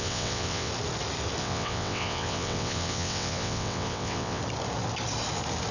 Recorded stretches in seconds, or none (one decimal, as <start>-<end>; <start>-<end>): 0.7-1.4; 4.4-5.7